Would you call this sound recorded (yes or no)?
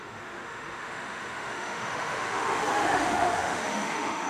no